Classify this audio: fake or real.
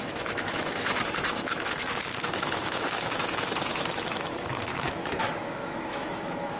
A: fake